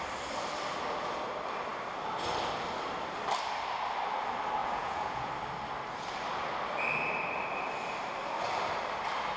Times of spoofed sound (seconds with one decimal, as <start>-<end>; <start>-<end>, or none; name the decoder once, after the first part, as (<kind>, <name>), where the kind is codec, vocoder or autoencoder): 4.6-5.3 (vocoder, Vocos)